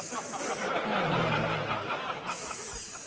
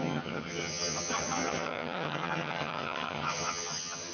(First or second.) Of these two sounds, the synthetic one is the second